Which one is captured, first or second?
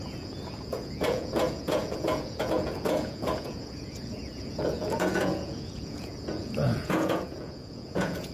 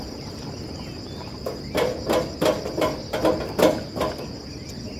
second